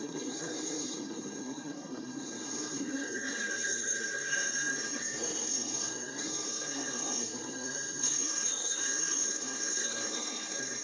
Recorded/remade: remade